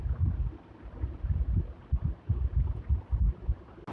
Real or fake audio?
real